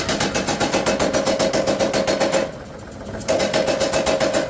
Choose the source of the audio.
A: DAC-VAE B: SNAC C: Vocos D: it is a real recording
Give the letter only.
D